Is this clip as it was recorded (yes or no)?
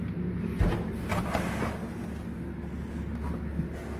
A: yes